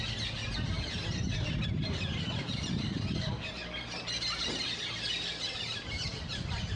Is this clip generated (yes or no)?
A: no